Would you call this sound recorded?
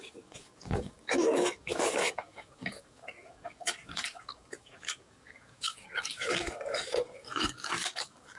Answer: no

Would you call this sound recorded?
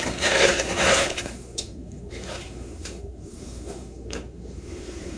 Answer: no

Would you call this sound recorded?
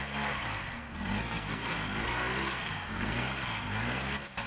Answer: no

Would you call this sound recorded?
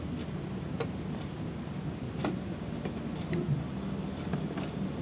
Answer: yes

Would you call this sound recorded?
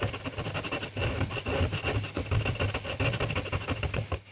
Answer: yes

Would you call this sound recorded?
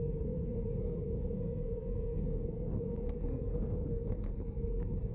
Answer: no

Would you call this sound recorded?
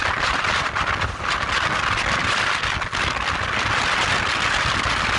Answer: yes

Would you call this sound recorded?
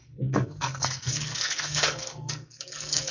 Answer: no